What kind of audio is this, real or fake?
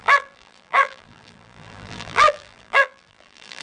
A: fake